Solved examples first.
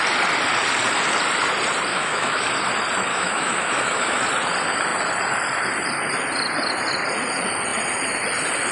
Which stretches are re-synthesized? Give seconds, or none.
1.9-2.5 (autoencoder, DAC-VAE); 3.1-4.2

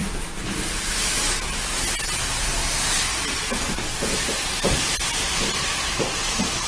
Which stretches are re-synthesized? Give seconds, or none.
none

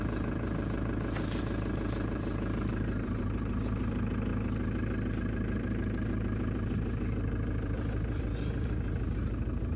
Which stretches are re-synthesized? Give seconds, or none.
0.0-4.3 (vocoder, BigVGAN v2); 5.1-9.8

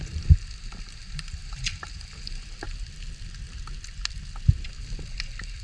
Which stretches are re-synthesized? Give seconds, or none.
none

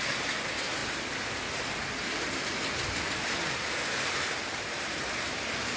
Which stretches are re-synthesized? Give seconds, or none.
none

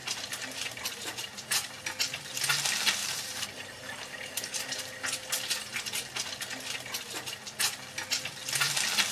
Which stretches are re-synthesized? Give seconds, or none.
0.0-1.8 (vocoder, BigVGAN v2); 3.0-4.6